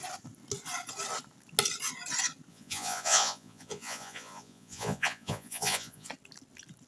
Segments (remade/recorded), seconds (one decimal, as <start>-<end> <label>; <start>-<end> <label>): 0.0-2.5 recorded; 2.5-6.1 remade; 6.1-6.9 recorded